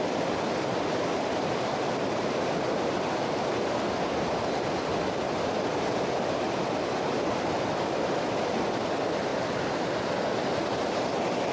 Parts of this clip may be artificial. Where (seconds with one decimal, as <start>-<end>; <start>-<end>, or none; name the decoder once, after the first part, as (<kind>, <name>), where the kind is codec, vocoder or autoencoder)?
9.3-9.9 (vocoder, BigVGAN v2)